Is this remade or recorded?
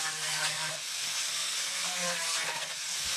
remade